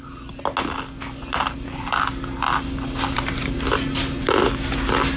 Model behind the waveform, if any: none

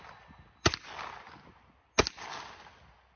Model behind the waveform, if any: none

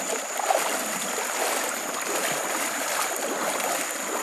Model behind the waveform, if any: none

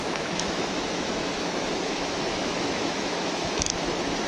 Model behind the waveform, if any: autoencoder, DAC-VAE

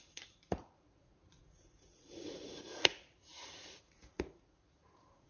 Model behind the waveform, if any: vocoder, Vocos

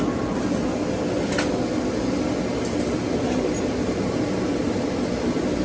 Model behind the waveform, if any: none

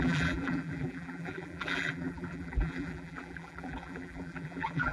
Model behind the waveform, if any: vocoder, BigVGAN v2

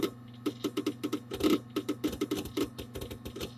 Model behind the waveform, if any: none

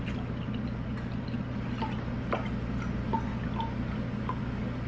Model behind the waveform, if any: none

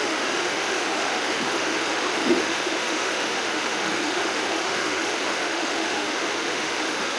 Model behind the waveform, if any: autoencoder, DAC-VAE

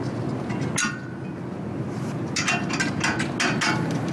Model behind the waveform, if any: none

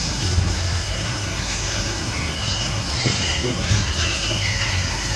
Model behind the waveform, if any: codec, SNAC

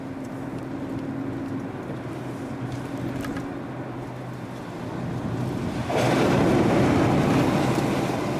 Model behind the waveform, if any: none